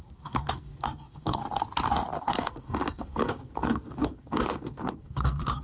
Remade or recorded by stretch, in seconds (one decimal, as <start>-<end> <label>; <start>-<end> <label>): 0.0-1.4 remade; 1.4-2.2 recorded; 2.2-5.6 remade